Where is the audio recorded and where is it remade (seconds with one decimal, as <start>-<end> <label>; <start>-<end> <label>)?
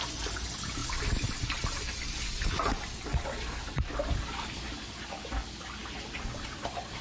0.0-7.0 recorded